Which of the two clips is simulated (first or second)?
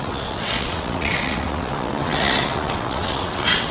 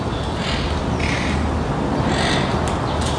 first